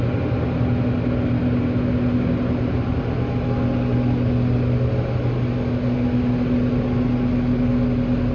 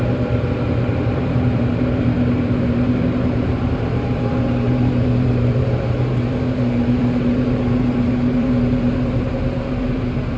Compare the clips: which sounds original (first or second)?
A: first